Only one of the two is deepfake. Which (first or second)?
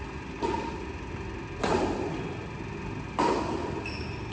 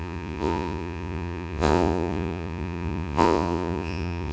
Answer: second